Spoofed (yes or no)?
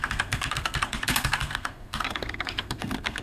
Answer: yes